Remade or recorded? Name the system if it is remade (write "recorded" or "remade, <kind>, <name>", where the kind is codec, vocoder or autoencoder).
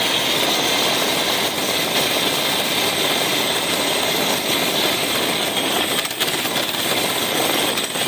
recorded